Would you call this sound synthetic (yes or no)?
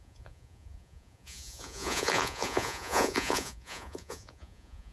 yes